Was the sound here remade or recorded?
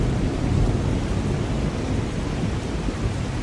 recorded